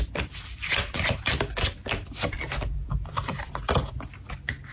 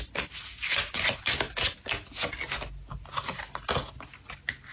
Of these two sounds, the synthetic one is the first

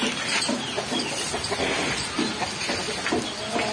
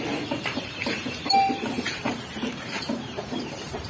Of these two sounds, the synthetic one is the second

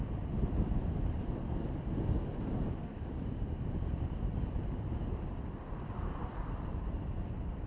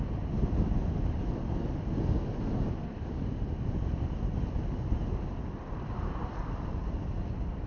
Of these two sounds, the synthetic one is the first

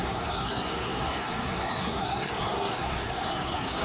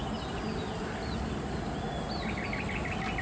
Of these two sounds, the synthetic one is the first